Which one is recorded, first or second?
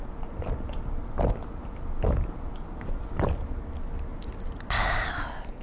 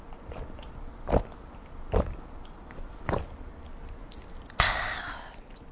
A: first